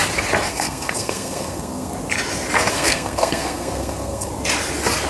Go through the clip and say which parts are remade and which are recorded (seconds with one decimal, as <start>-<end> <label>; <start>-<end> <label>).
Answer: 0.0-0.5 recorded; 0.5-1.9 remade; 1.9-2.7 recorded; 2.7-4.3 remade; 4.3-5.1 recorded

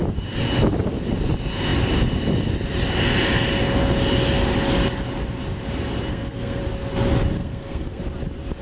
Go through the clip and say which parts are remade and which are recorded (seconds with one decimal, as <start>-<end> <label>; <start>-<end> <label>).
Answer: 0.0-6.1 recorded; 6.1-6.6 remade; 6.6-7.4 recorded; 7.4-8.0 remade; 8.0-8.6 recorded

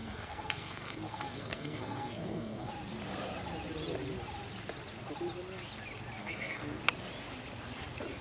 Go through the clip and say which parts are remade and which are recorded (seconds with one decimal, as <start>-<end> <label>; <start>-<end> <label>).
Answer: 0.0-2.7 remade; 2.7-6.2 recorded; 6.2-6.8 remade; 6.8-8.2 recorded

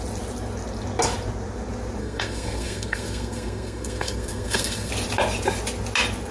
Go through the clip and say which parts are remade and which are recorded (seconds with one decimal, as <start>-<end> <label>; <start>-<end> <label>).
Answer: 0.0-2.0 recorded; 2.0-4.9 remade; 4.9-6.3 recorded

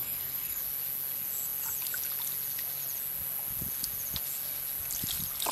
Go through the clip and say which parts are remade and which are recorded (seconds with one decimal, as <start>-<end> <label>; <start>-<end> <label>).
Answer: 0.0-0.6 remade; 0.6-5.5 recorded

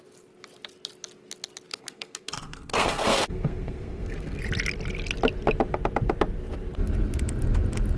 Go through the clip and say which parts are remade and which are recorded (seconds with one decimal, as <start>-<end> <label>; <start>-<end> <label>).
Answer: 0.0-1.7 recorded; 1.7-4.4 remade; 4.4-8.0 recorded

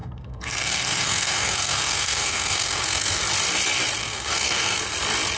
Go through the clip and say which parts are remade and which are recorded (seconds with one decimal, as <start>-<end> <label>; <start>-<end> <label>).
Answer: 0.0-3.2 remade; 3.2-4.0 recorded; 4.0-4.8 remade; 4.8-5.4 recorded